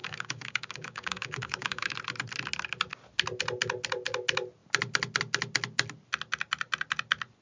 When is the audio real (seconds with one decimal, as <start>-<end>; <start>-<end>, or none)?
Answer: 1.9-7.4